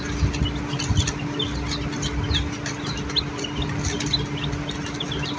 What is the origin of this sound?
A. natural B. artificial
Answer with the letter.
A